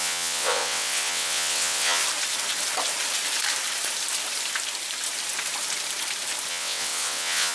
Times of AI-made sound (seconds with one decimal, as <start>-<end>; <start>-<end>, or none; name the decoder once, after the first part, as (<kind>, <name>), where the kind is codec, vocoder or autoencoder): 0.0-2.0 (vocoder, WaveNeXt); 6.5-7.5